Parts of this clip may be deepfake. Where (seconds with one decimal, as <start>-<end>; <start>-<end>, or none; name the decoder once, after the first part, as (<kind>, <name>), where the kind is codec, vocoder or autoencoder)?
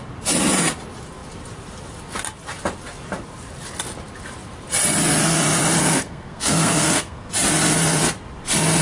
5.8-7.3 (codec, SNAC)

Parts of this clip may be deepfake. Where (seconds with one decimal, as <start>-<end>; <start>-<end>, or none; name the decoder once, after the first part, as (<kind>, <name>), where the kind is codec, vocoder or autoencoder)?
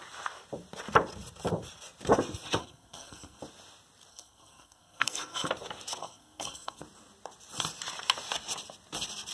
2.6-3.4 (codec, SNAC); 4.1-5.5; 6.0-6.8